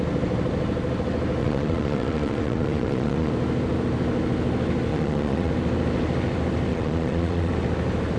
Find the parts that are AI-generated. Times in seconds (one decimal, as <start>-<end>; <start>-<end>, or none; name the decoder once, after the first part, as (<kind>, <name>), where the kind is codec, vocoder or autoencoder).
1.4-3.3 (vocoder, Vocos); 4.9-5.5; 6.7-7.5

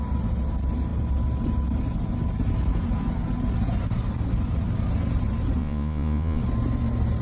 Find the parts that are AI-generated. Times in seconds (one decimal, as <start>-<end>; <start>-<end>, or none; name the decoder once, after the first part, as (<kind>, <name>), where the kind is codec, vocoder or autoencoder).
5.6-6.4 (vocoder, Vocos)

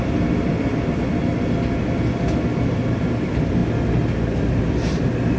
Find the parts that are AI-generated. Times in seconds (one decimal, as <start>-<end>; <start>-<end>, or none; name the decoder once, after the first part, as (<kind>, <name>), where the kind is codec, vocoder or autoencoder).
none

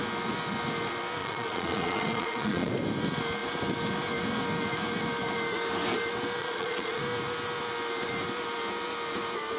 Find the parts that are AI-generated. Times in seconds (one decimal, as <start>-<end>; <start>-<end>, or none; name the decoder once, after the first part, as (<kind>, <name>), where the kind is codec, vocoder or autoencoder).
1.2-2.7 (vocoder, Vocos); 6.4-7.0

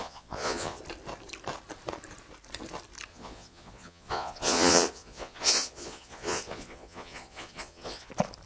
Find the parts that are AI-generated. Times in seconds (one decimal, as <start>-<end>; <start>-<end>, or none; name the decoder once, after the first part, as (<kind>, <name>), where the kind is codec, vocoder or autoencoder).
0.0-0.8 (vocoder, Vocos); 3.1-8.1

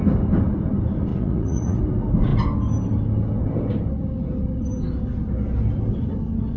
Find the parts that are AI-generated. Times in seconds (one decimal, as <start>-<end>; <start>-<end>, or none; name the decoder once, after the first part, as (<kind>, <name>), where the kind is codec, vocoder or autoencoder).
1.1-1.8 (vocoder, Vocos)

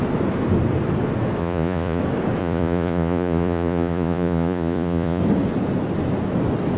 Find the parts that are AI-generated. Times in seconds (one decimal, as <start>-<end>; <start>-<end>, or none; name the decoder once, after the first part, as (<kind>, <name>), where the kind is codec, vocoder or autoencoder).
1.4-2.0 (vocoder, Vocos); 2.4-5.2

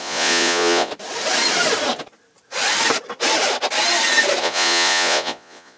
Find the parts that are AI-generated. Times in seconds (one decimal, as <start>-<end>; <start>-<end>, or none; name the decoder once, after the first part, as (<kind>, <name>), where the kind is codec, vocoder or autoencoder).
0.0-0.9 (vocoder, Vocos); 4.4-5.8